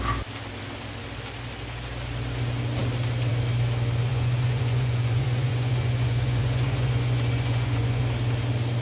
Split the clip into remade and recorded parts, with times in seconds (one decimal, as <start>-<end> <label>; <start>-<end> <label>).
0.0-4.1 recorded; 4.1-8.0 remade; 8.0-8.8 recorded